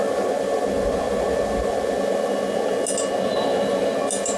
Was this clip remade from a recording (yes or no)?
no